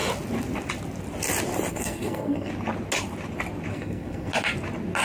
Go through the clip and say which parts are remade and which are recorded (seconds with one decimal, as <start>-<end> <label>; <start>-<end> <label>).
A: 0.0-1.7 recorded; 1.7-2.5 remade; 2.5-3.7 recorded; 3.7-4.3 remade; 4.3-5.0 recorded